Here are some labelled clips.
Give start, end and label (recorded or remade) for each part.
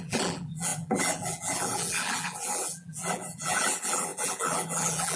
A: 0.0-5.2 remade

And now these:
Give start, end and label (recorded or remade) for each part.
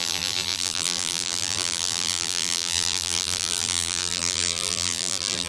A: 0.0-5.5 remade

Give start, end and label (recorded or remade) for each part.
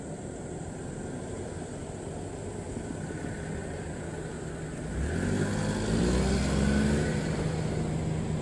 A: 0.0-8.4 recorded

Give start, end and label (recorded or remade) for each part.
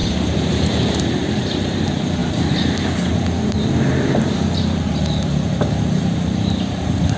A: 0.0-7.2 remade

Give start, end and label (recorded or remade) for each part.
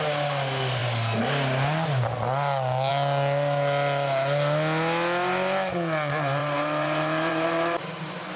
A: 0.0-6.4 recorded; 6.4-7.9 remade; 7.9-8.4 recorded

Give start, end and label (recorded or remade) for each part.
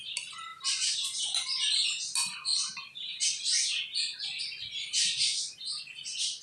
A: 0.0-0.5 recorded; 0.5-1.6 remade; 1.6-5.0 recorded; 5.0-5.8 remade; 5.8-6.4 recorded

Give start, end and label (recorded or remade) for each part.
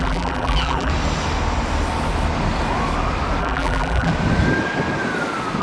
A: 0.0-0.9 remade; 0.9-3.4 recorded; 3.4-4.1 remade; 4.1-5.6 recorded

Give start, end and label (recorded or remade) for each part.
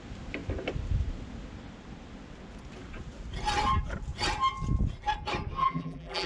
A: 0.0-5.6 recorded; 5.6-6.3 remade